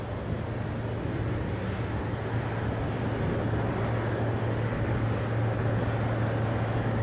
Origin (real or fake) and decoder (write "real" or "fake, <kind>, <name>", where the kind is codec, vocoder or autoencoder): real